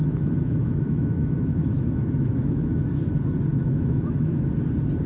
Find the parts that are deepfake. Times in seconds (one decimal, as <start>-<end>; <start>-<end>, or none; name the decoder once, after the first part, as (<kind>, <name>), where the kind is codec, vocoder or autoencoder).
0.0-3.1 (autoencoder, DAC-VAE); 3.6-4.5